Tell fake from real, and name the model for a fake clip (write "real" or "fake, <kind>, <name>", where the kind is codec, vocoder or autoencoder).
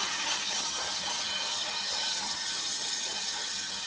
fake, vocoder, HiFi-GAN